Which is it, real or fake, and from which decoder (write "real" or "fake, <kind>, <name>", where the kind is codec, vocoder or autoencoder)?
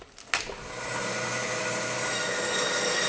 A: real